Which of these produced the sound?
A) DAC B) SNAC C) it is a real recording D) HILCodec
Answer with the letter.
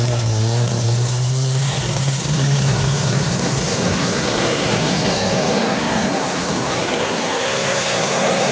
B